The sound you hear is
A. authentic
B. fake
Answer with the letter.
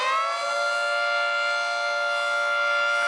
A